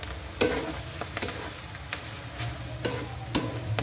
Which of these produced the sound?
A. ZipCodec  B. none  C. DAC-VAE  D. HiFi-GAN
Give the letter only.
B